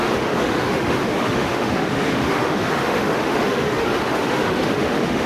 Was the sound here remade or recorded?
remade